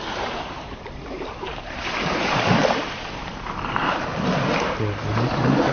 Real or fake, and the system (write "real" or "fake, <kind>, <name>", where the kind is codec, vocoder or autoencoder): fake, vocoder, BigVGAN v2